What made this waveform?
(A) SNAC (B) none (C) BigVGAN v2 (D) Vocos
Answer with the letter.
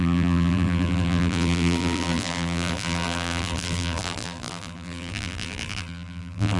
C